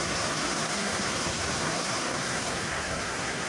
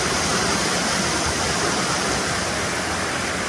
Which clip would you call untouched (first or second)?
second